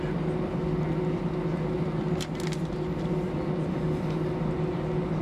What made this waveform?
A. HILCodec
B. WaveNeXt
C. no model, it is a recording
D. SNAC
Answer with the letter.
C